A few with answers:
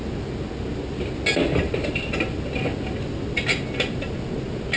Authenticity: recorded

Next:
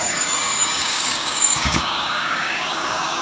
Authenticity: remade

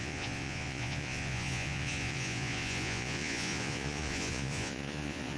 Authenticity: remade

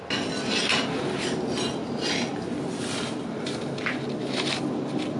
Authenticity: recorded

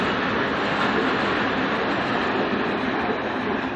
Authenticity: recorded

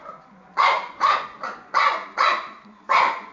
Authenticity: remade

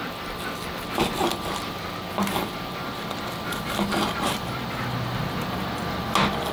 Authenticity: recorded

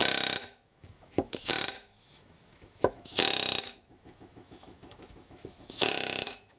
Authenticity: remade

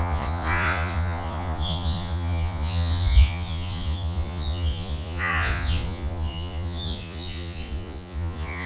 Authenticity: remade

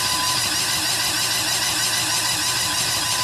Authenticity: recorded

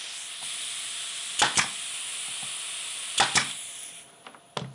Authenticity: recorded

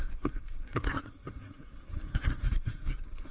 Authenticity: remade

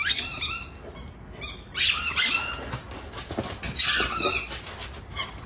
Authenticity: recorded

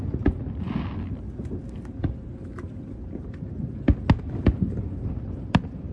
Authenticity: recorded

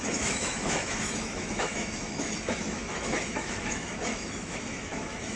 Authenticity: remade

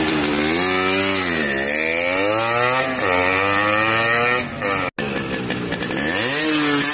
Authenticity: recorded